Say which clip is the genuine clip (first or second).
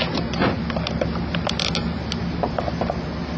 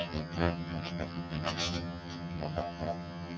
first